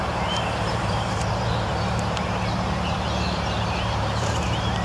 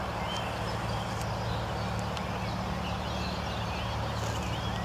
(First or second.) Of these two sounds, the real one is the second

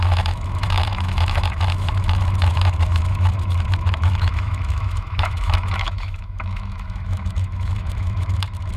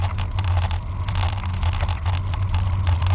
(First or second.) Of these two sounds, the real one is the second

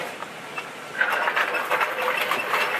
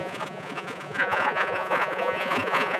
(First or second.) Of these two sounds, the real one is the first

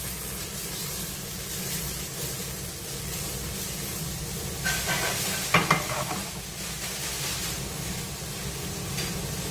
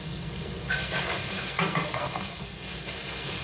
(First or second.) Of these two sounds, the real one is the first